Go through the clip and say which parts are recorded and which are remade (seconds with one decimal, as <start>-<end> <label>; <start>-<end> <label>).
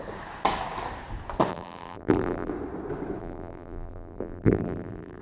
0.0-1.5 recorded; 1.5-2.5 remade; 2.5-3.2 recorded; 3.2-5.2 remade